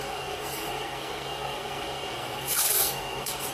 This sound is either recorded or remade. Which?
remade